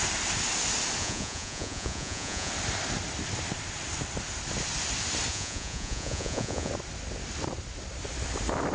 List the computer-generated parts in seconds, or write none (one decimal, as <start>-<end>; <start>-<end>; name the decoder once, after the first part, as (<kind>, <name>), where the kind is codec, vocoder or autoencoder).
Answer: 1.0-2.5 (vocoder, Vocos); 5.3-6.7